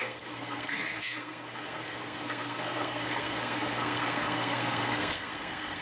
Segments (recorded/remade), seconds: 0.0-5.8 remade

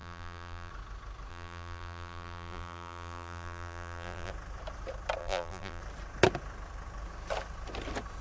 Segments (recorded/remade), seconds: 0.0-0.7 remade; 0.7-1.3 recorded; 1.3-4.3 remade; 4.3-5.2 recorded; 5.2-5.8 remade; 5.8-8.2 recorded

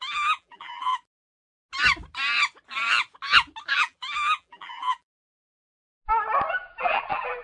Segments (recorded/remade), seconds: 0.0-0.9 remade; 0.9-3.7 recorded; 3.7-5.6 remade; 5.6-6.5 recorded; 6.5-7.4 remade

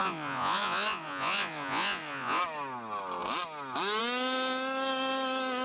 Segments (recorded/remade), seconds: 0.0-2.4 remade; 2.4-5.6 recorded

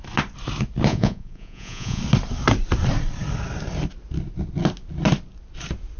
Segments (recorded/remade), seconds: 0.0-0.9 recorded; 0.9-2.0 remade; 2.0-6.0 recorded

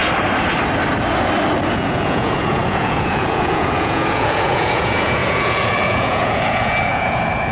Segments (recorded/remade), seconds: 0.0-1.7 recorded; 1.7-7.5 remade

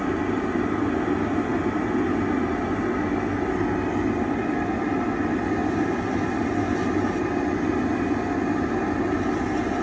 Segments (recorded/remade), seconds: 0.0-9.8 recorded